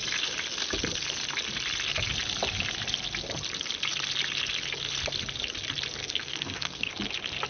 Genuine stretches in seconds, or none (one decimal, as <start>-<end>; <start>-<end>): 0.0-6.0; 6.9-7.5